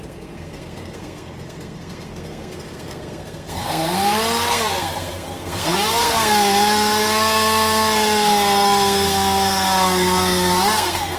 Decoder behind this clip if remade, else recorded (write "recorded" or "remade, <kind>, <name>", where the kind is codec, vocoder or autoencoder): remade, codec, SNAC